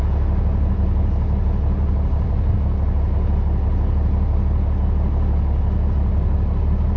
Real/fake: real